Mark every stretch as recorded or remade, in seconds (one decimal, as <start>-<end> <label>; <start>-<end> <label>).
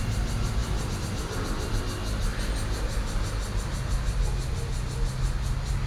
0.0-0.6 recorded; 0.6-1.8 remade; 1.8-5.9 recorded